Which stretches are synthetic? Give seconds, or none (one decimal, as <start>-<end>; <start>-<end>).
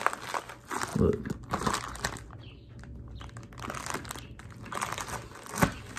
none